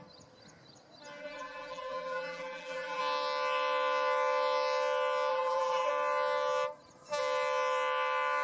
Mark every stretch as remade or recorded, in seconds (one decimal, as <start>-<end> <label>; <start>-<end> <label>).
0.0-1.2 recorded; 1.2-3.0 remade; 3.0-5.3 recorded; 5.3-5.9 remade; 5.9-8.4 recorded